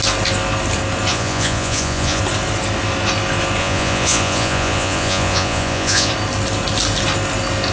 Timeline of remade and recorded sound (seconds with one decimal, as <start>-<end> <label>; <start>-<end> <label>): 0.0-1.1 recorded; 1.1-2.2 remade; 2.2-3.6 recorded; 3.6-6.1 remade; 6.1-7.7 recorded